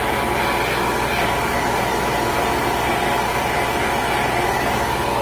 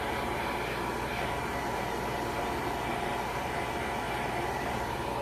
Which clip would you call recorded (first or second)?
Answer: first